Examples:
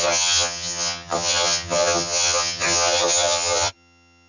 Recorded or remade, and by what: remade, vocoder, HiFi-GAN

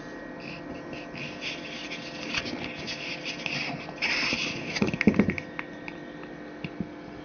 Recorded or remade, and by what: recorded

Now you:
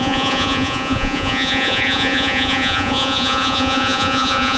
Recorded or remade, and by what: remade, vocoder, Vocos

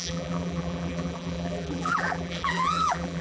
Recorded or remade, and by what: remade, vocoder, BigVGAN v2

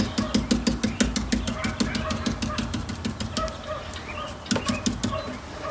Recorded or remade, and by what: recorded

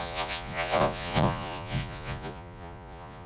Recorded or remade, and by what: remade, vocoder, Vocos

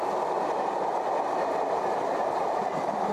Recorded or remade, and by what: recorded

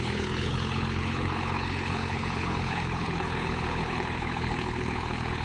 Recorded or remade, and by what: remade, codec, HILCodec